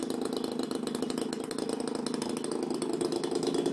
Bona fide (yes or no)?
yes